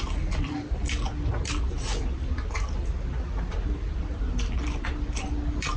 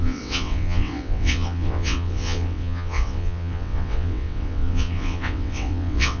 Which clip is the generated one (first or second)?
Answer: second